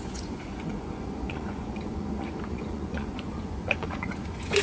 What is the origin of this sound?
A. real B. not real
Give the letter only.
B